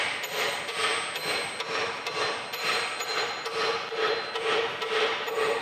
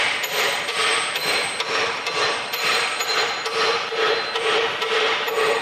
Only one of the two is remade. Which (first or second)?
second